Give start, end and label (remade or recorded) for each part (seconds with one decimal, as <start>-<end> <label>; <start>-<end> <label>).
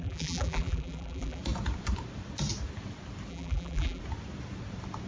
0.0-1.4 remade; 1.4-3.3 recorded; 3.3-4.0 remade; 4.0-5.1 recorded